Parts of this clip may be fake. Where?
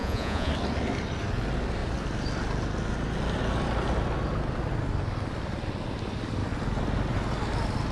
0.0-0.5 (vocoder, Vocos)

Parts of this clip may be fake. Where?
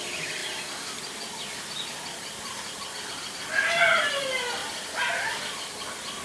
none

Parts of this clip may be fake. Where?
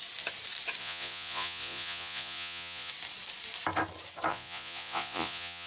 0.8-2.9 (vocoder, Vocos); 4.3-5.7